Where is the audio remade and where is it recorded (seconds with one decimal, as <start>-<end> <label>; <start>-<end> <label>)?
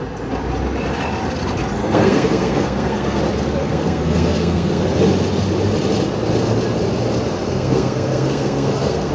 0.0-1.8 recorded; 1.8-3.2 remade; 3.2-3.6 recorded; 3.6-4.8 remade; 4.8-7.5 recorded; 7.5-9.1 remade